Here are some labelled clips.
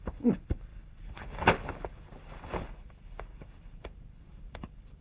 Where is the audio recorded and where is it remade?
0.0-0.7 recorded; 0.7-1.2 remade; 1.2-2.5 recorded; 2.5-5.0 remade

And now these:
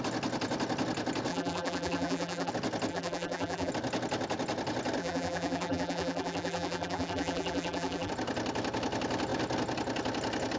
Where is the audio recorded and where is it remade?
0.0-1.3 recorded; 1.3-2.5 remade; 2.5-2.9 recorded; 2.9-3.7 remade; 3.7-5.0 recorded; 5.0-8.1 remade; 8.1-10.6 recorded

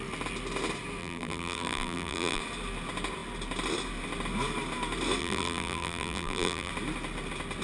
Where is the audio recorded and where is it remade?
0.0-1.0 recorded; 1.0-2.4 remade; 2.4-5.2 recorded; 5.2-6.7 remade; 6.7-7.6 recorded

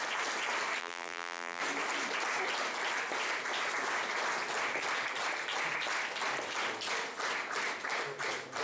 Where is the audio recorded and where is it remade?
0.0-0.8 recorded; 0.8-1.6 remade; 1.6-8.6 recorded

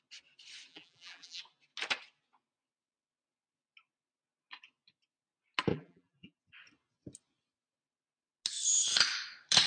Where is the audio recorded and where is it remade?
0.0-0.7 recorded; 0.7-1.4 remade; 1.4-5.7 recorded; 5.7-6.4 remade; 6.4-9.7 recorded

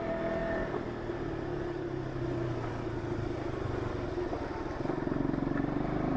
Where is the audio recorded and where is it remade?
0.0-6.2 recorded

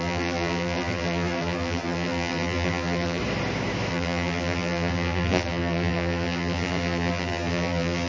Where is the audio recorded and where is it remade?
0.0-3.2 remade; 3.2-3.9 recorded; 3.9-8.1 remade

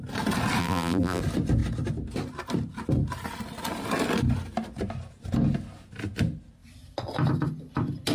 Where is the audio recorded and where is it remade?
0.0-0.6 recorded; 0.6-1.2 remade; 1.2-8.1 recorded